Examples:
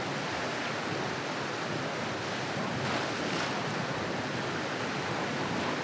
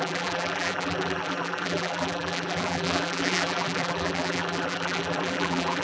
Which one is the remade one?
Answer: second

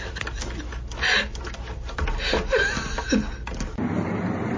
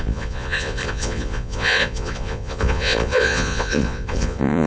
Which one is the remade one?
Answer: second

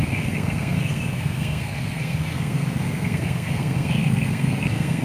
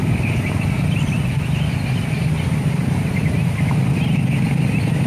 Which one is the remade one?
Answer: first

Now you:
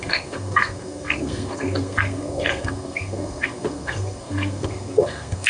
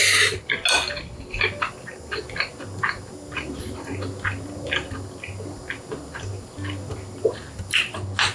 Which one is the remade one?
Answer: first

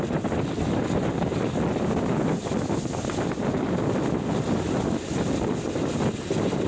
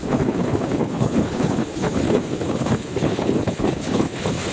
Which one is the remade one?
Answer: second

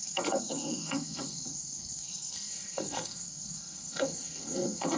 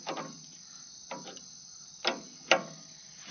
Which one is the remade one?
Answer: first